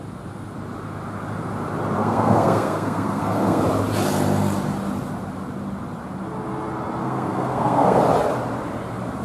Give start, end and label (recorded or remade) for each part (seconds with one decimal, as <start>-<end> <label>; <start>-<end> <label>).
0.0-2.0 recorded; 2.0-3.6 remade; 3.6-7.0 recorded; 7.0-8.0 remade; 8.0-9.2 recorded